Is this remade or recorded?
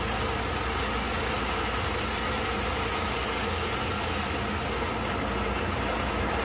recorded